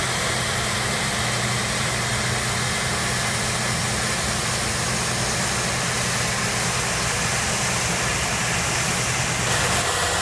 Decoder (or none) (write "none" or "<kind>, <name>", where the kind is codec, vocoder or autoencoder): none